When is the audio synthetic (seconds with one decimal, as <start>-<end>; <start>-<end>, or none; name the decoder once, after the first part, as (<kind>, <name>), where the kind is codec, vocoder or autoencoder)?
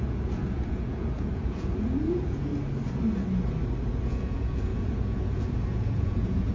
0.0-2.5 (vocoder, Vocos); 3.9-6.5